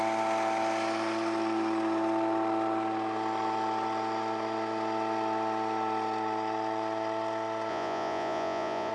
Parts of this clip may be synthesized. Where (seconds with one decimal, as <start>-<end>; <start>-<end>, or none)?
7.7-8.9